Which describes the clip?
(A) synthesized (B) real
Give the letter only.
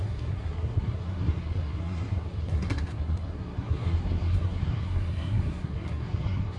A